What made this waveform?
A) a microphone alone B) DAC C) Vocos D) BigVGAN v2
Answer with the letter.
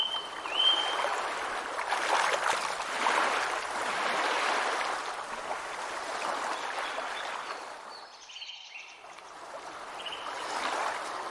D